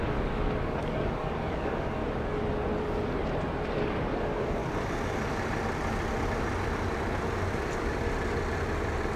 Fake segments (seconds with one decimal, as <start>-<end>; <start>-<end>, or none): 0.0-2.0; 3.8-4.6